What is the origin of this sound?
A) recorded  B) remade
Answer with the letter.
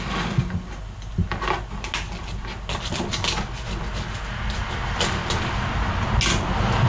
A